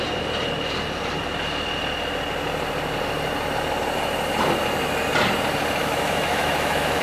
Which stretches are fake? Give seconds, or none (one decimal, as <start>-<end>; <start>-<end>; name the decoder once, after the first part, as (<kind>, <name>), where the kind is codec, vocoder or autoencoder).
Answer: 5.8-7.0 (autoencoder, DAC-VAE)